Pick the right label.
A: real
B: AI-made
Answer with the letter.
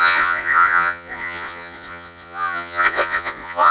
B